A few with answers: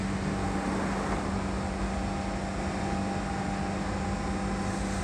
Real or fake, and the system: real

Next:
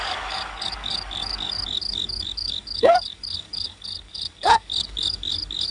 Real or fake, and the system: fake, codec, DAC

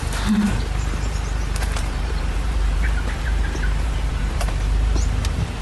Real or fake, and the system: fake, vocoder, BigVGAN v2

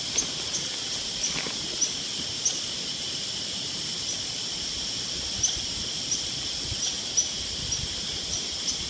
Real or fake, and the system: real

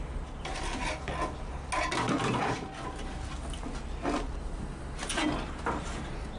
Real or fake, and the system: real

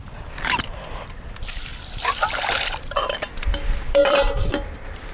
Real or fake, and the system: fake, vocoder, BigVGAN v2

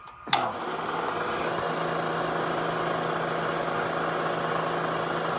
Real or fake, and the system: real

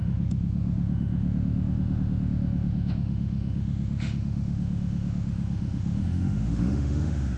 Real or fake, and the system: fake, autoencoder, DAC-VAE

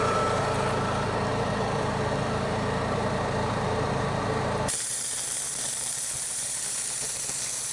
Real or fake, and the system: fake, vocoder, BigVGAN v2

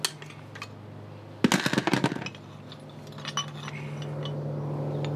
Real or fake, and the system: real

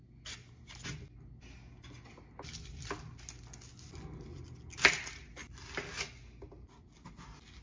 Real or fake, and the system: real